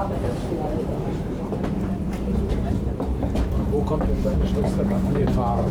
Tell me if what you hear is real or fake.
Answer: fake